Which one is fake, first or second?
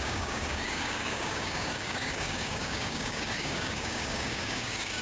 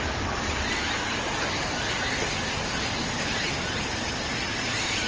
first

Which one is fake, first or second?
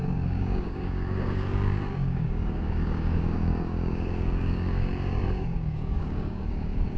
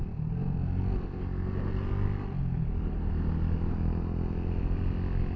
first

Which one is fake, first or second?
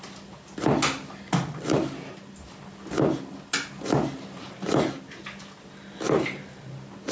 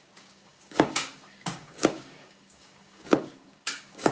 second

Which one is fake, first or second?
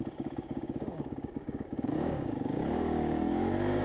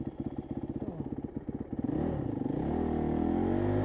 first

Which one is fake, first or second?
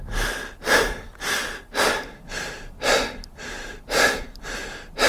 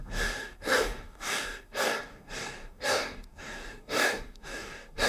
second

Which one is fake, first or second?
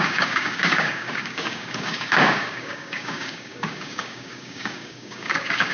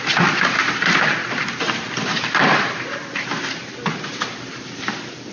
first